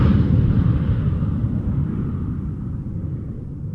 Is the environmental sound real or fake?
real